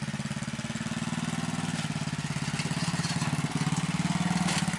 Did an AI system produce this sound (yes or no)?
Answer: no